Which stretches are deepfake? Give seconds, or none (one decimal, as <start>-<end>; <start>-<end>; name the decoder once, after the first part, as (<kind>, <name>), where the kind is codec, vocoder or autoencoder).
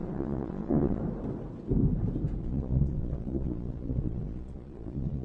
0.0-1.0 (vocoder, Vocos); 2.4-5.2